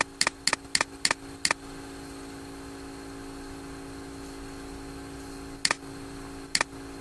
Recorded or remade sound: recorded